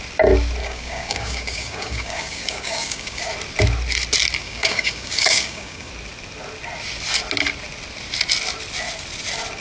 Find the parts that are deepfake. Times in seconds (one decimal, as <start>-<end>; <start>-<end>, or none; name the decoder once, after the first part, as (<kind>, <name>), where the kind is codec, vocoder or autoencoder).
0.6-3.2 (codec, DAC); 4.4-5.9